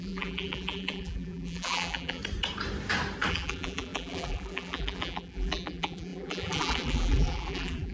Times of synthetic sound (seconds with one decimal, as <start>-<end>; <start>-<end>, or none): 0.0-2.2; 3.3-7.9